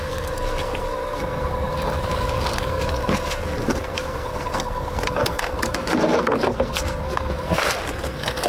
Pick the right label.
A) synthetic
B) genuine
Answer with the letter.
A